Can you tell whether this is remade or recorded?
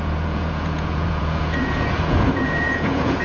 remade